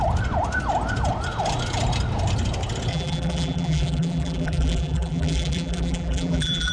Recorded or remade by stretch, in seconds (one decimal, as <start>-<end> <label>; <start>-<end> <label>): 0.0-2.9 recorded; 2.9-6.7 remade